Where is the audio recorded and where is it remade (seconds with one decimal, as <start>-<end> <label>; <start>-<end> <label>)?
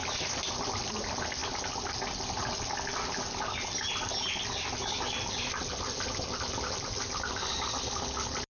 0.0-8.5 recorded